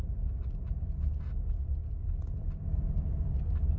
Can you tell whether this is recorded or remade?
recorded